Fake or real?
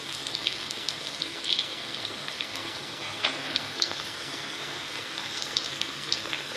fake